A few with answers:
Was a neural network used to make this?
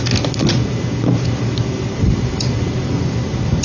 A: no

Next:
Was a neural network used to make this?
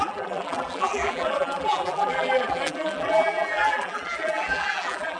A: yes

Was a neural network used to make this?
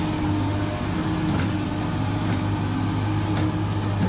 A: no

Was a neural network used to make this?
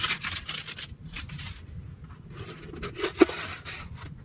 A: no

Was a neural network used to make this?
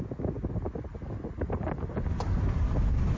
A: no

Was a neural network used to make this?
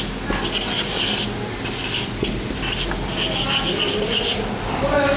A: no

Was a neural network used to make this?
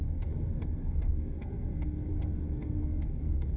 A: yes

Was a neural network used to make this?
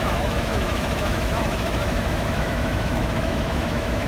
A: yes